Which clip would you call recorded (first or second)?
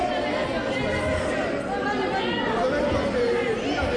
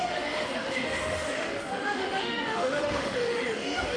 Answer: first